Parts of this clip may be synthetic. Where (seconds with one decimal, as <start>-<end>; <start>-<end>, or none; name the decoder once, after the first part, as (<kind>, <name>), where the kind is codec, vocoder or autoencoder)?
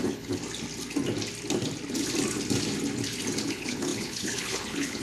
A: 0.0-0.4 (codec, HILCodec); 3.4-5.0